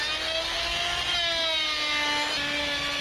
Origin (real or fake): real